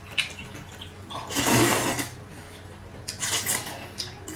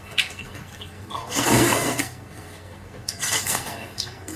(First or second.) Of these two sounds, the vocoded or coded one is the second